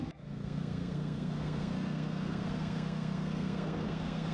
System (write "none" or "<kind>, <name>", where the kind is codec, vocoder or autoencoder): codec, SNAC